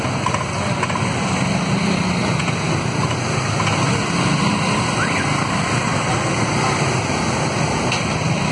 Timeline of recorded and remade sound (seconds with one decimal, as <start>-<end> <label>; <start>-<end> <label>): 0.0-8.5 recorded